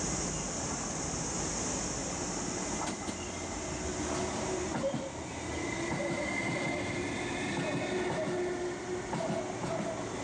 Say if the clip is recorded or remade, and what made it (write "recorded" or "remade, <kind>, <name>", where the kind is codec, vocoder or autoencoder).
recorded